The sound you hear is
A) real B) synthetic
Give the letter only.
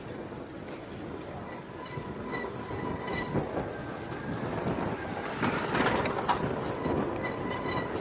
A